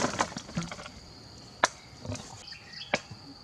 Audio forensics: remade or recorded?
recorded